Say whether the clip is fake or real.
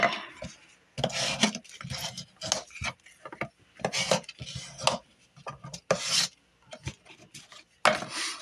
real